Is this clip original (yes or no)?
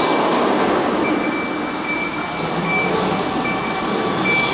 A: yes